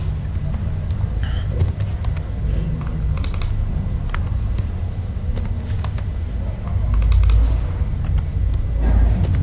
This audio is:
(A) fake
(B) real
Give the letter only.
B